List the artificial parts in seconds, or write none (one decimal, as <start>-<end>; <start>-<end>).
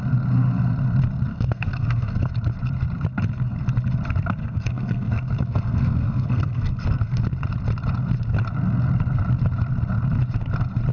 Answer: 1.3-2.3; 4.4-7.2